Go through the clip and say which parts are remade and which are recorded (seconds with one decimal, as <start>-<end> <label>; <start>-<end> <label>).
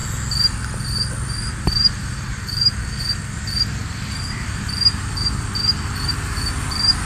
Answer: 0.0-1.5 recorded; 1.5-7.1 remade